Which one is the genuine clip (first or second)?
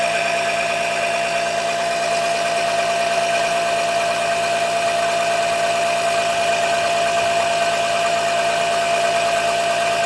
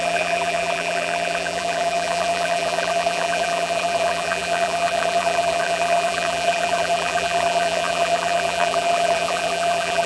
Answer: first